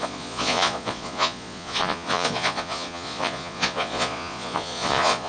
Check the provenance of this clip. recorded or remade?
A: remade